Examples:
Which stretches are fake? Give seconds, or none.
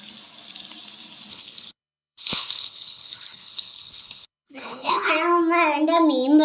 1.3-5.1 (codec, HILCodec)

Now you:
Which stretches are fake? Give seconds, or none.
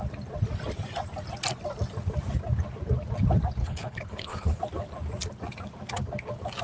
3.6-4.6 (codec, HILCodec)